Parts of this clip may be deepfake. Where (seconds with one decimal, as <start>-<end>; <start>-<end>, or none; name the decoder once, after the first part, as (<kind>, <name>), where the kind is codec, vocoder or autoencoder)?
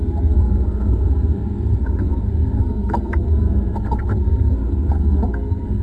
0.0-5.8 (codec, SNAC)